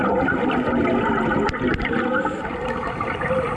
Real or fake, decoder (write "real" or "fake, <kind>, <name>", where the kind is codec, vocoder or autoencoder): real